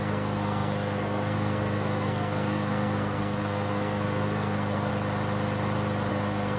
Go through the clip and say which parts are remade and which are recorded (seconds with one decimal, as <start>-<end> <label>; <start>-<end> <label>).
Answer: 0.0-4.9 remade; 4.9-6.1 recorded; 6.1-6.6 remade